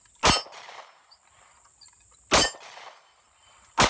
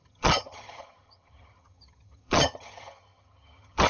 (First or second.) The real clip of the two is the first